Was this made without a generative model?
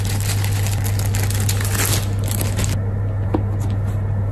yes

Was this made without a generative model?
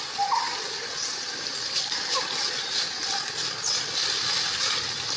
yes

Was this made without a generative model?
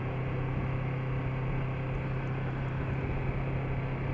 yes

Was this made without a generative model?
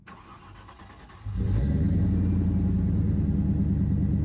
yes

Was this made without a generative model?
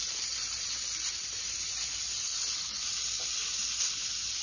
yes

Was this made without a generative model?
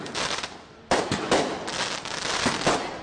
yes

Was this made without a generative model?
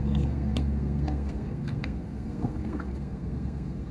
no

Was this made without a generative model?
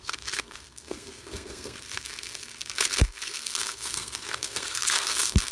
no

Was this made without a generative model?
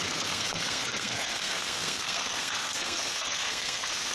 no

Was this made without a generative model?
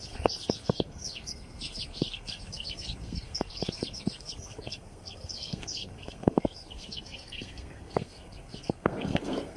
no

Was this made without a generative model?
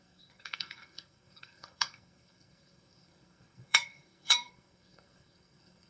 no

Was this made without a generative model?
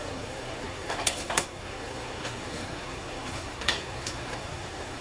no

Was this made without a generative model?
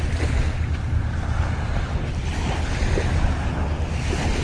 yes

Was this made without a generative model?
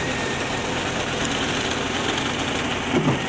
yes